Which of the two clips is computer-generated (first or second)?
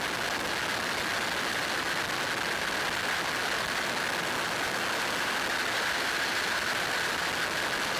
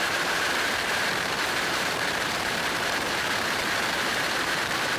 second